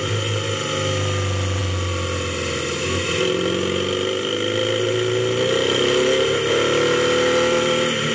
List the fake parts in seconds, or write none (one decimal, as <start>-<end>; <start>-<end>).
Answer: none